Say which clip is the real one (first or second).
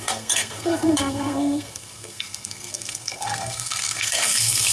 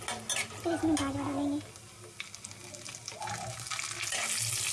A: second